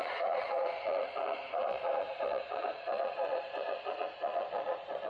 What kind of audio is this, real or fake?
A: fake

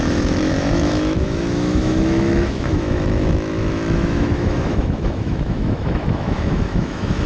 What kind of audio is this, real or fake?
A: fake